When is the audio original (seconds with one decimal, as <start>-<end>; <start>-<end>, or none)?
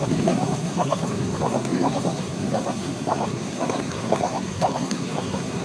none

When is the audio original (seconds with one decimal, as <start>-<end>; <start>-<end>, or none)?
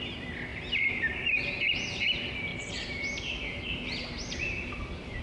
0.0-0.5; 1.3-2.5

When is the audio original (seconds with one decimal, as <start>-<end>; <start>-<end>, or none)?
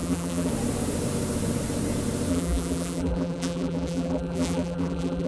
0.5-2.3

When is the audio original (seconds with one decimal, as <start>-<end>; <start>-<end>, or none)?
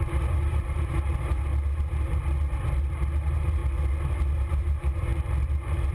1.5-3.2; 3.6-4.5; 5.1-5.9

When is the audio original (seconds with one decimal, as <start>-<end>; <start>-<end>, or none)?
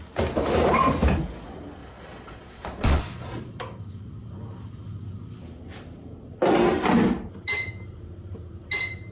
0.0-1.8; 3.5-9.1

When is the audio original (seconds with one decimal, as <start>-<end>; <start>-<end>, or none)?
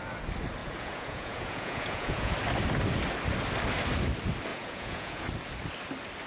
0.0-0.6; 2.3-4.5; 5.2-6.3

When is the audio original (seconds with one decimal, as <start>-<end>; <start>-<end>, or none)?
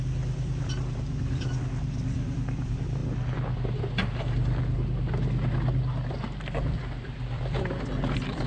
3.0-6.4